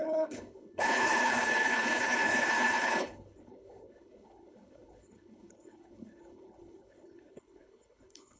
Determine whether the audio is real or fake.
fake